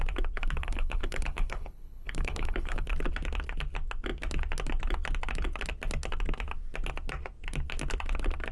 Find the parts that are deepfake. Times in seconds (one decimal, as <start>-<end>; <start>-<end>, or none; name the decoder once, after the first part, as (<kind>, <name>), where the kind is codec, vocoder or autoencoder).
0.4-2.9 (codec, HILCodec)